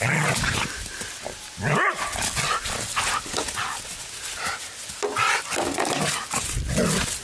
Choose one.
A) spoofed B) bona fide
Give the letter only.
B